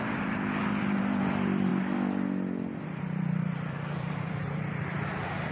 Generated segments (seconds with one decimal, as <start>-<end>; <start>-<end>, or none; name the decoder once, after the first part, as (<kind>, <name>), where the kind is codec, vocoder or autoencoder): 0.0-1.7 (vocoder, BigVGAN v2); 2.8-5.5